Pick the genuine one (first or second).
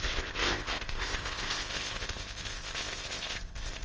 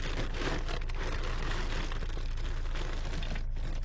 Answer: second